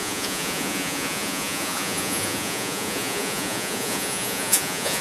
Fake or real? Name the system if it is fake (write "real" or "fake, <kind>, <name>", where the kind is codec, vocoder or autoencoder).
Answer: fake, vocoder, Vocos